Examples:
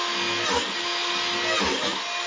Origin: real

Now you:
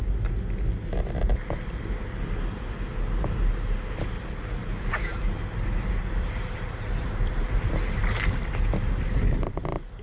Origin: real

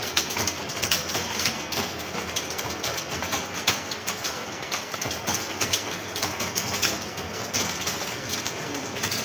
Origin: fake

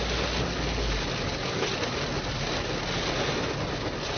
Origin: real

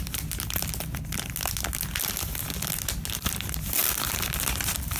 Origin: real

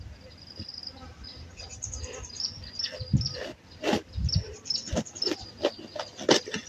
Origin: real